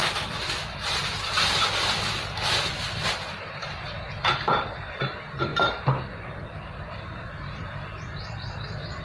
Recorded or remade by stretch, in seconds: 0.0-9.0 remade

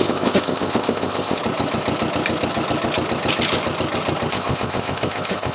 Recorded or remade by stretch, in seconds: 0.0-1.4 remade; 1.4-4.3 recorded; 4.3-5.5 remade

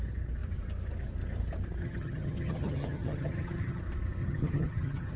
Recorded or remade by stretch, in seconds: 0.0-1.8 recorded; 1.8-3.8 remade; 3.8-4.2 recorded; 4.2-5.2 remade

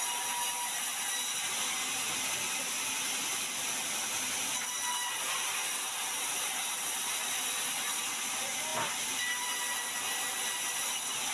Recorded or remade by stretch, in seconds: 0.0-11.3 recorded

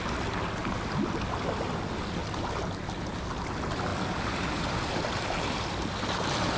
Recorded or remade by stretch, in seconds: 0.0-3.9 recorded; 3.9-5.2 remade; 5.2-6.6 recorded

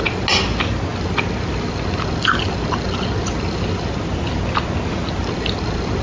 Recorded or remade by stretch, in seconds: 0.0-6.0 recorded

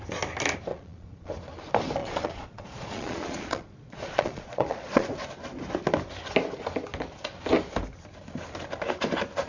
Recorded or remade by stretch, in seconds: 0.0-0.7 recorded; 0.7-1.3 remade; 1.3-2.0 recorded; 2.0-5.1 remade; 5.1-9.5 recorded

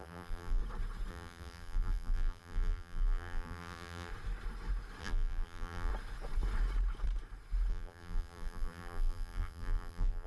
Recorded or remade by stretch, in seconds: 0.0-0.6 remade; 0.6-1.1 recorded; 1.1-4.1 remade; 4.1-5.0 recorded; 5.0-5.9 remade; 5.9-7.7 recorded; 7.7-10.3 remade